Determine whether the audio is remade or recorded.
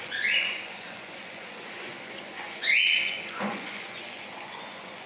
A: remade